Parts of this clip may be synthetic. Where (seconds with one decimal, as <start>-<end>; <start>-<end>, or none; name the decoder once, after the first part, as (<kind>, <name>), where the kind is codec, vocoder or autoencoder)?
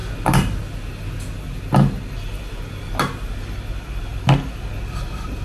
none